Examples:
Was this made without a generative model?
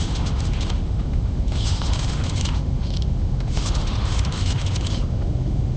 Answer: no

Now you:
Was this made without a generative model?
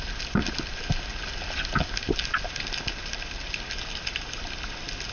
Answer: yes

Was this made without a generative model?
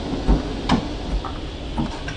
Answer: yes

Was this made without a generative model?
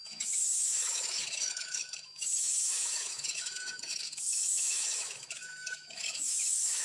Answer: no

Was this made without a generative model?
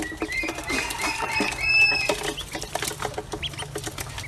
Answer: yes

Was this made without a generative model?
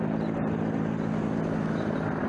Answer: yes